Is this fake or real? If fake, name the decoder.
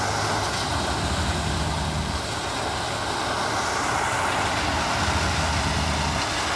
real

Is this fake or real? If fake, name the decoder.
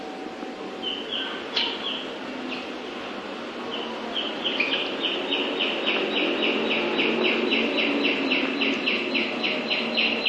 real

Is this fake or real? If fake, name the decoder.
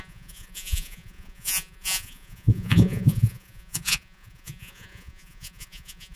fake, vocoder, Vocos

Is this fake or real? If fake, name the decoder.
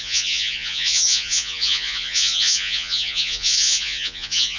fake, vocoder, Vocos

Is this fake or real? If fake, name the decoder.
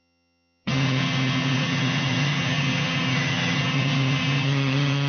fake, vocoder, HiFi-GAN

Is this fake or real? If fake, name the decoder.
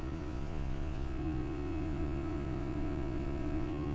fake, vocoder, Vocos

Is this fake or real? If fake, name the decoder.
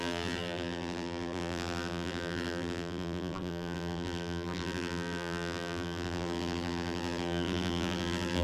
fake, vocoder, BigVGAN v2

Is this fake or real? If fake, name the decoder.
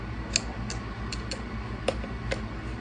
real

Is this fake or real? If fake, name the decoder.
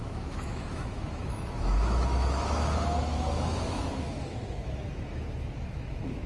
fake, autoencoder, DAC-VAE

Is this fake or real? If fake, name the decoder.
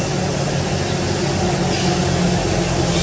real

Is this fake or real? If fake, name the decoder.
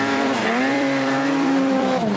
fake, vocoder, BigVGAN v2